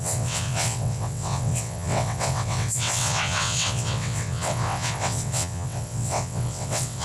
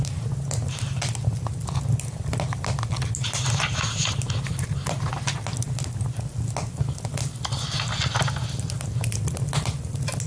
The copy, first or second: first